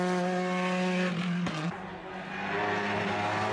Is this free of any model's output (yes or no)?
yes